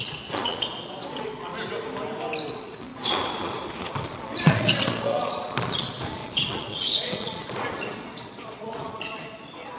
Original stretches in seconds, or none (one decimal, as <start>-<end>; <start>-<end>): 1.5-2.5